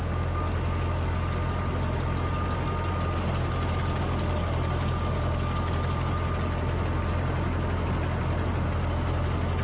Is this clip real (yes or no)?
yes